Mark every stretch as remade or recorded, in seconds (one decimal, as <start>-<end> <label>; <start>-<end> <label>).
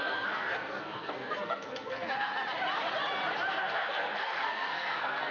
0.0-2.3 remade; 2.3-3.5 recorded; 3.5-5.3 remade